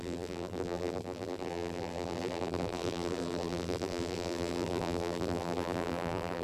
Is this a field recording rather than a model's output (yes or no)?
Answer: no